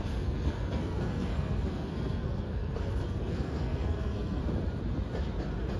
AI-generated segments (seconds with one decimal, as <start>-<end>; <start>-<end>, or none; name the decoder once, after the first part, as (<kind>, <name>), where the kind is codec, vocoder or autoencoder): 0.0-4.4 (codec, SNAC)